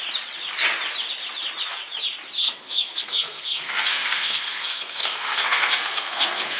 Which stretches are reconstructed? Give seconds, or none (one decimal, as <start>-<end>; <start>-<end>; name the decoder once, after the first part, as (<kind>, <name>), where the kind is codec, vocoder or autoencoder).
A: 2.4-6.6 (codec, SNAC)